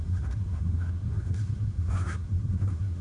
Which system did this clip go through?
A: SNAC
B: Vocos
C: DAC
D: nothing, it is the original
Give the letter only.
A